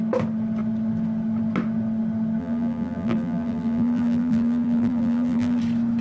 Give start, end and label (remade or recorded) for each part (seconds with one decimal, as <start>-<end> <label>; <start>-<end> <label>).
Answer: 0.0-2.4 recorded; 2.4-5.6 remade; 5.6-6.0 recorded